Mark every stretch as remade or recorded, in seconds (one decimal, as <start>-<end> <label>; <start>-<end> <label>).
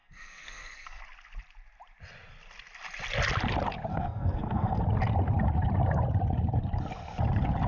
0.0-1.0 remade; 1.0-3.9 recorded; 3.9-4.8 remade; 4.8-7.7 recorded